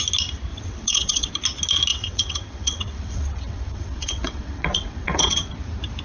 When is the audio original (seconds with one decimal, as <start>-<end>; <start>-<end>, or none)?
0.0-0.5; 1.3-1.9; 5.5-6.0